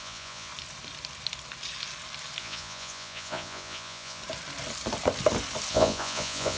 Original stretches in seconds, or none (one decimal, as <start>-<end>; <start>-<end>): 0.5-2.4; 4.2-5.7